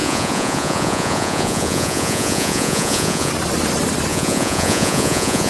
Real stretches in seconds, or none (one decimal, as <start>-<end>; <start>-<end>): 3.3-4.1